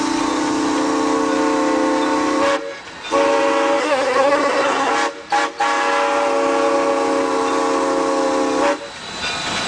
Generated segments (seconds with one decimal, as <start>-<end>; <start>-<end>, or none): 3.8-4.9